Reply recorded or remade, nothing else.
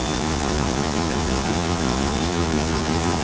remade